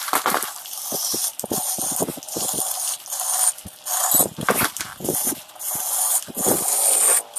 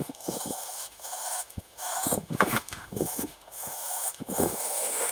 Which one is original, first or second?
first